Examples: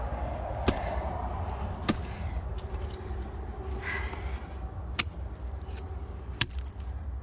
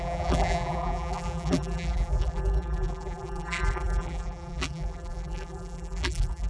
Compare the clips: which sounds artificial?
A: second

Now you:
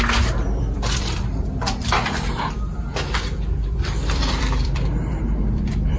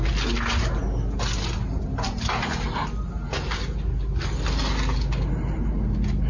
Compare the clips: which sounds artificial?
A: first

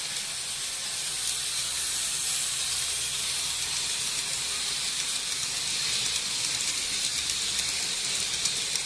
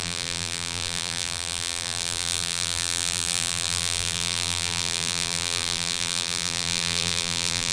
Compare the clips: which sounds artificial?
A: second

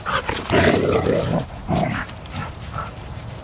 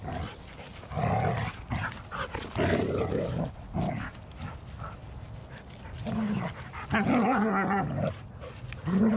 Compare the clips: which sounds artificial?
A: first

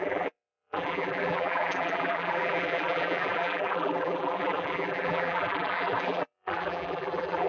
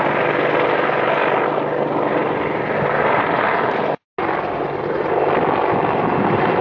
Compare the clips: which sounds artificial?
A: first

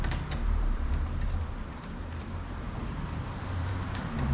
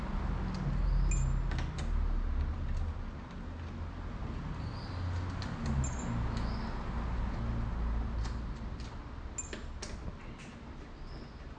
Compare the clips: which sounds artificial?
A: first